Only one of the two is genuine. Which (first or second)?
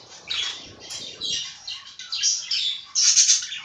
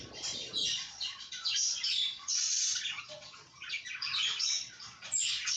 first